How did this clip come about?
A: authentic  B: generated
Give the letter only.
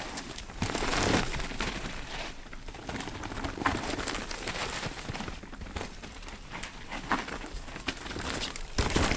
A